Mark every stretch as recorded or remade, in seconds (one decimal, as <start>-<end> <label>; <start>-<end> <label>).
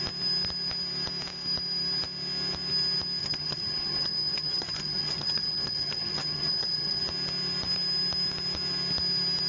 0.0-3.2 recorded; 3.2-7.0 remade; 7.0-9.5 recorded